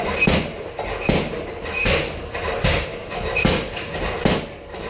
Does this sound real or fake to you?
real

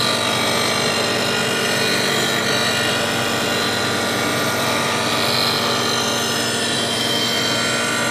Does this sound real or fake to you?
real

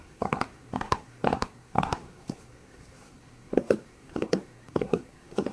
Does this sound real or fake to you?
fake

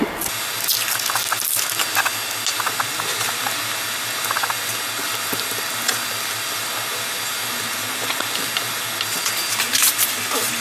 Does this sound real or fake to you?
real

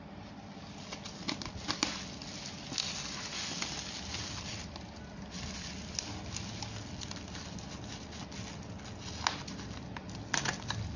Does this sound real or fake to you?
real